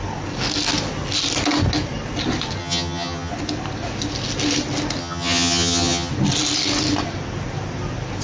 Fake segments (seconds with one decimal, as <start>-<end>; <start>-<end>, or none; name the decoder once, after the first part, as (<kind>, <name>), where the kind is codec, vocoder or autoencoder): 2.6-3.3 (vocoder, HiFi-GAN); 5.0-6.1